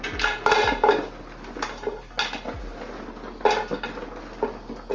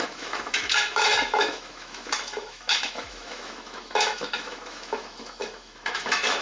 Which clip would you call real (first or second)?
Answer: first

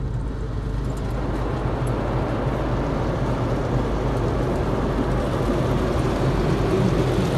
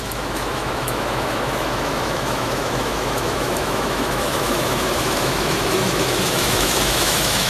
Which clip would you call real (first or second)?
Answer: first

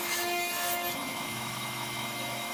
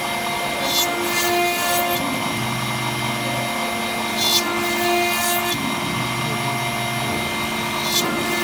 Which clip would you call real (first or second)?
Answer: second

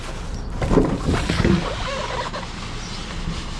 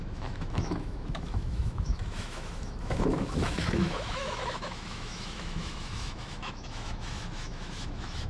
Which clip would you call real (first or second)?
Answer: first